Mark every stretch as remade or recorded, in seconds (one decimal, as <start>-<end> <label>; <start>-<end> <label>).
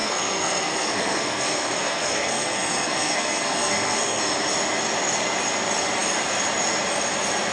0.0-4.2 remade; 4.2-7.5 recorded